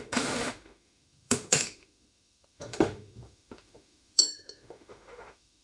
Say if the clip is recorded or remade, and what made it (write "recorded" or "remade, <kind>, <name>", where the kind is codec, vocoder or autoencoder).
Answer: remade, autoencoder, DAC-VAE